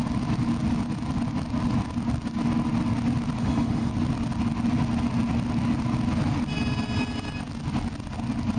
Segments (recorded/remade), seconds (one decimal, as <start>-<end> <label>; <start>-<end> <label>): 0.0-3.4 recorded; 3.4-3.9 remade; 3.9-8.6 recorded